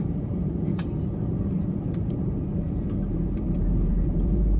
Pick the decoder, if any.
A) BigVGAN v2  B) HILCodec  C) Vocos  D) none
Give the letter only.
A